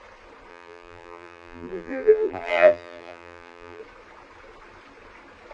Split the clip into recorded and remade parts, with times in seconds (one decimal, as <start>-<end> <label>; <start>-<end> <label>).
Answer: 0.0-0.5 recorded; 0.5-3.8 remade; 3.8-5.5 recorded